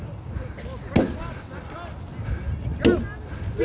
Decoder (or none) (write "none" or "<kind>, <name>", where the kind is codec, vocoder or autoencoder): none